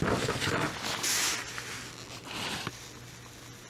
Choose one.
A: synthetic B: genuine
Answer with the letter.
B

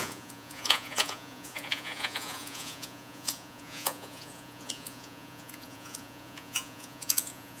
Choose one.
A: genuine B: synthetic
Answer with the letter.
B